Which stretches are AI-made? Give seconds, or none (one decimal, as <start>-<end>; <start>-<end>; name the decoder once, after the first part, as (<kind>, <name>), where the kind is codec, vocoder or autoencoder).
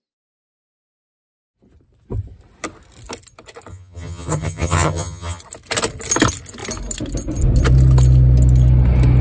3.7-5.4 (vocoder, HiFi-GAN)